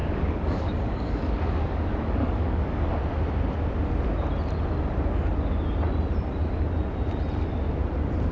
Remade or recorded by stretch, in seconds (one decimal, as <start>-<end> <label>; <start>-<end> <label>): 0.0-2.9 remade; 2.9-8.3 recorded

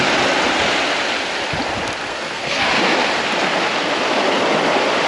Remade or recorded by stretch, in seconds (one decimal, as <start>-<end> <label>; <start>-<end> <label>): 0.0-2.1 recorded; 2.1-2.7 remade; 2.7-5.1 recorded

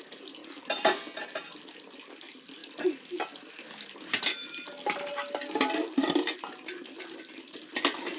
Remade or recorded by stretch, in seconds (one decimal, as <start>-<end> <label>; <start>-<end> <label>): 0.0-8.2 recorded

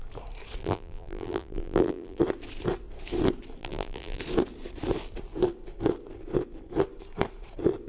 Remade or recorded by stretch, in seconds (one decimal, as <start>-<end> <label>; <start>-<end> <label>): 0.0-0.6 recorded; 0.6-2.2 remade; 2.2-3.6 recorded; 3.6-4.2 remade; 4.2-7.9 recorded

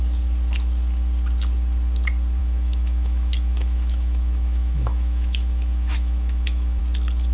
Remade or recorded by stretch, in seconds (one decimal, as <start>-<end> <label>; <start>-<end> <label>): 0.0-2.4 recorded; 2.4-6.8 remade; 6.8-7.3 recorded

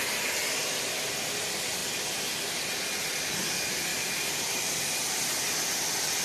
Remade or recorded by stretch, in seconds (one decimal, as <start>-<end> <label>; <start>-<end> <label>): 0.0-3.9 recorded; 3.9-5.5 remade; 5.5-6.2 recorded